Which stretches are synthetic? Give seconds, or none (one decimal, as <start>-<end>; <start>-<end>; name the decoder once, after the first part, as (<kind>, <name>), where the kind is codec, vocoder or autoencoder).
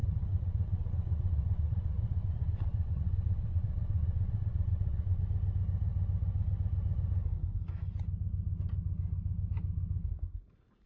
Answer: 0.0-5.2 (vocoder, WaveNeXt)